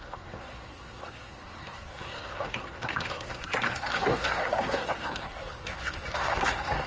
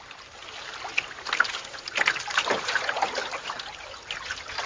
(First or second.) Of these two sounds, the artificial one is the first